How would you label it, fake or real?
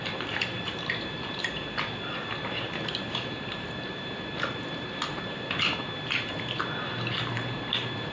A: fake